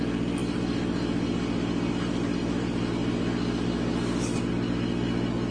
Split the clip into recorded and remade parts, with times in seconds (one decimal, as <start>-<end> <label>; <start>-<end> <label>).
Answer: 0.0-5.5 recorded